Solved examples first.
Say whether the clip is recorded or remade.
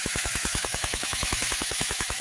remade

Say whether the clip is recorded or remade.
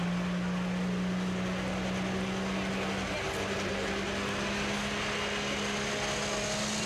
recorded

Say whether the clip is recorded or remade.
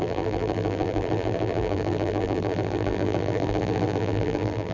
remade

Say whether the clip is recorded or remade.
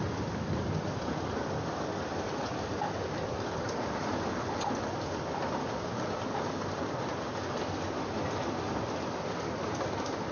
recorded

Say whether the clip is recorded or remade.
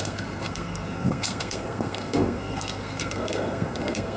remade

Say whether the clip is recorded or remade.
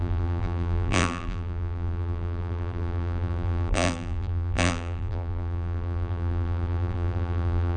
remade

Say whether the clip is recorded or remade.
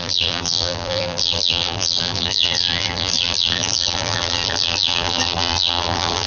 remade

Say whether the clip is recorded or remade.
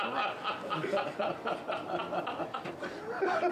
recorded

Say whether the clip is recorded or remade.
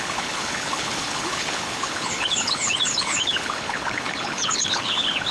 remade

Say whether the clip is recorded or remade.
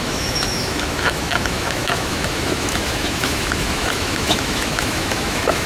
remade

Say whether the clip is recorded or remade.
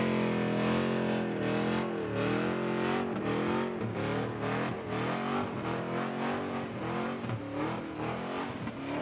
recorded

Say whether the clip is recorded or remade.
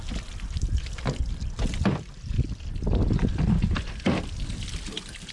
recorded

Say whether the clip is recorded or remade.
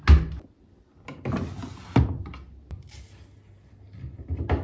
recorded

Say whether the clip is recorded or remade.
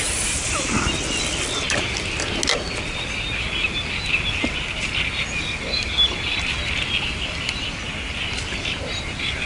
recorded